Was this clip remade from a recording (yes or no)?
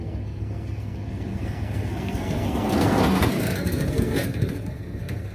yes